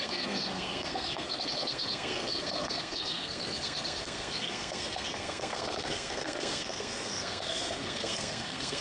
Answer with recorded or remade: remade